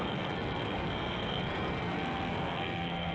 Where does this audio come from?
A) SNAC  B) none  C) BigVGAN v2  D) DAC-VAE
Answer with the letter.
A